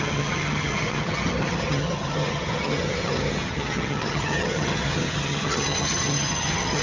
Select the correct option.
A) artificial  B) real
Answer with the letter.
A